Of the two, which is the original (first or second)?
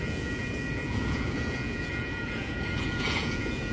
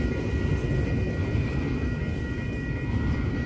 second